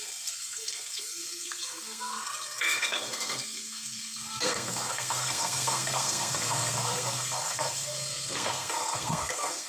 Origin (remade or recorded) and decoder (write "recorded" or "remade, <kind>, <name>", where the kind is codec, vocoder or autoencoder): remade, codec, SNAC